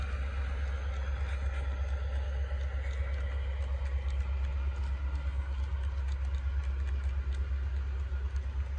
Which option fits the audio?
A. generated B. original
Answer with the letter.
B